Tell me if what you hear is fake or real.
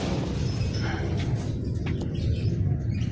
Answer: real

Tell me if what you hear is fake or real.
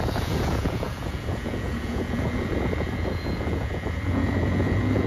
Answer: fake